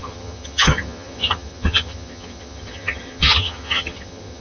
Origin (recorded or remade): remade